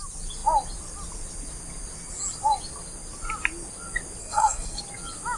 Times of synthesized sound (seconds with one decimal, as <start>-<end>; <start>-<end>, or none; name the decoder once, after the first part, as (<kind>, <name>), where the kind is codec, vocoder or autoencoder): 4.2-4.8 (codec, SNAC)